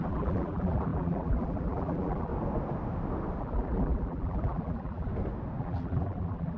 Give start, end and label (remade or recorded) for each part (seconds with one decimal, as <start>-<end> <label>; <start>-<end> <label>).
0.0-2.3 remade; 2.3-3.4 recorded; 3.4-5.1 remade; 5.1-5.6 recorded; 5.6-6.6 remade